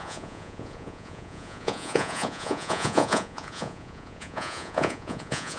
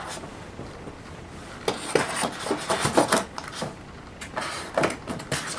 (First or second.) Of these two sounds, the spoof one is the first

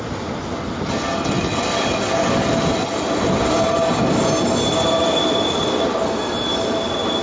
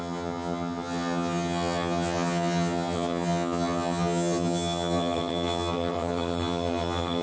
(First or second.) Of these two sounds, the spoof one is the second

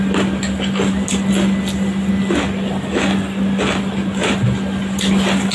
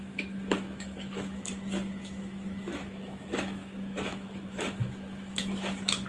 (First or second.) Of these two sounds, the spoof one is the second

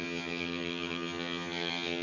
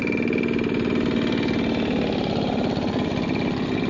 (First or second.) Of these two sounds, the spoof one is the first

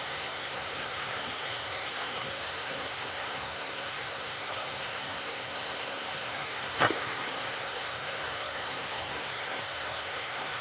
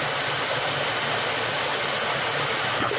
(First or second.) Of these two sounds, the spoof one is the first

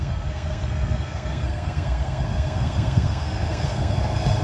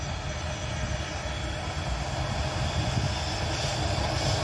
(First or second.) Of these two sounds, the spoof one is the first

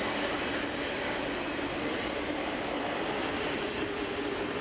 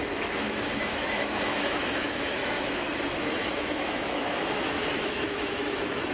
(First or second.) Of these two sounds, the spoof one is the second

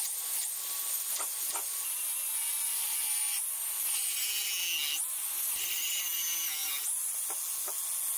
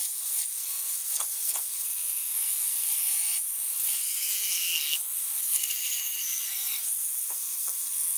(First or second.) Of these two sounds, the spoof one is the second